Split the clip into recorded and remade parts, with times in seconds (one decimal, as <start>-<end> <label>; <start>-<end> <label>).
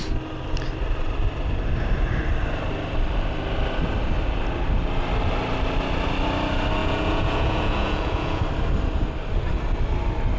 0.0-6.8 recorded; 6.8-8.4 remade; 8.4-10.4 recorded